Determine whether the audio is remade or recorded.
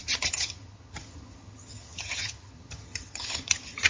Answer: remade